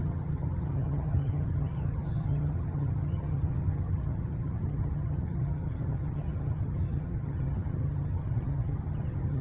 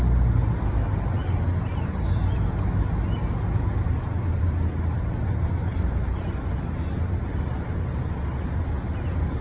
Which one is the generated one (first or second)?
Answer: first